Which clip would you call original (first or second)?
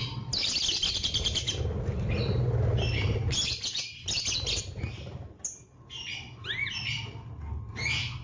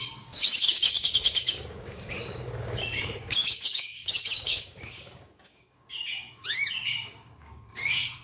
first